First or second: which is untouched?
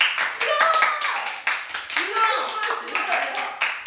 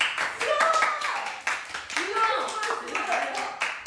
first